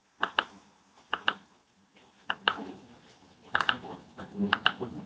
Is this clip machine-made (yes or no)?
no